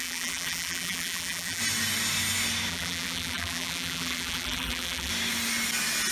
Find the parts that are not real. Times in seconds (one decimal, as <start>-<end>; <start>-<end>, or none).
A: 0.0-1.6; 2.7-5.1